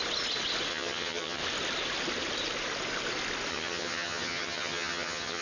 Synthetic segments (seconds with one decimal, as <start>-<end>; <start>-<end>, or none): 0.7-1.4; 3.5-5.4